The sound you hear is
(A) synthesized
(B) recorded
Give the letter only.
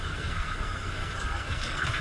A